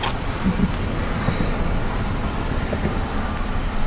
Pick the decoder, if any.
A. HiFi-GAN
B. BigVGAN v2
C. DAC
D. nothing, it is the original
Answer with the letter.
D